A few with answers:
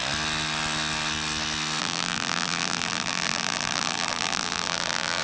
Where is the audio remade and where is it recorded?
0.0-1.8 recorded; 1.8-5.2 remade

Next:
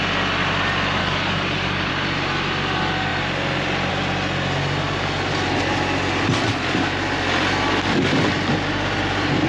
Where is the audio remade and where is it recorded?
0.0-1.0 recorded; 1.0-1.9 remade; 1.9-9.5 recorded